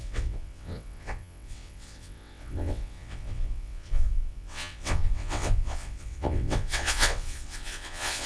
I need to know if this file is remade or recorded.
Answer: remade